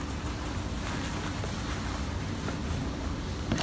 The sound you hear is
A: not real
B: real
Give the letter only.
B